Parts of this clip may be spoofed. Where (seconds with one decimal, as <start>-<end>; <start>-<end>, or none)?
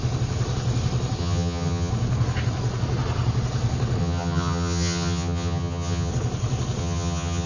1.2-1.9; 4.0-6.1; 6.8-7.5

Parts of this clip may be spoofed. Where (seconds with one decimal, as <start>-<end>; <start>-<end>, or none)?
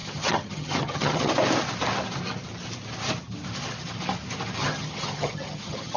0.0-1.3; 4.6-6.0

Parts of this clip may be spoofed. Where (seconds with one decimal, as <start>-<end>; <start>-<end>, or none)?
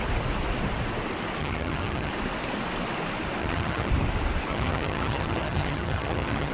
1.4-2.1; 3.4-3.9; 4.5-6.5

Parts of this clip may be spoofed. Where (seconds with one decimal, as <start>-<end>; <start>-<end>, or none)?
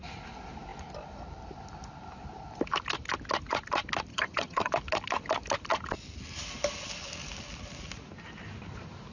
4.1-4.7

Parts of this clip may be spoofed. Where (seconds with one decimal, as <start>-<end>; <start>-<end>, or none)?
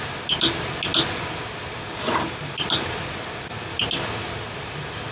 none